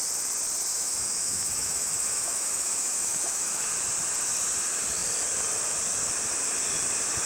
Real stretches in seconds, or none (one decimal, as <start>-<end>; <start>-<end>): 0.0-0.7; 3.7-7.3